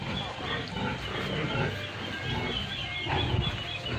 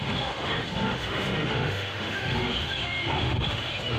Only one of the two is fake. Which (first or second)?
second